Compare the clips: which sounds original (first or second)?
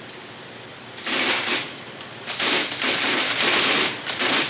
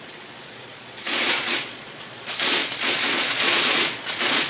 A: first